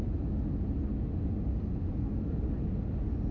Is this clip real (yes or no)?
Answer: yes